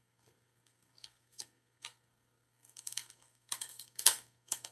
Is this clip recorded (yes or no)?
no